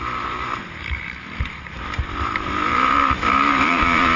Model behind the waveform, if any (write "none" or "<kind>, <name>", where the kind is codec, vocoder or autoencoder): vocoder, BigVGAN v2